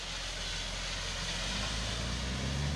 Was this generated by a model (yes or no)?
no